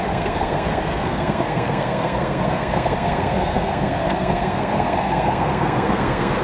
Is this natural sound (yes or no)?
no